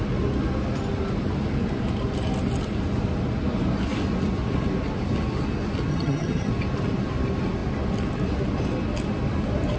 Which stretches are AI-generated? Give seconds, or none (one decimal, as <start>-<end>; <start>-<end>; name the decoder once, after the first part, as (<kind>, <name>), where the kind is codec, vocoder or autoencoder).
5.9-6.5 (vocoder, HiFi-GAN)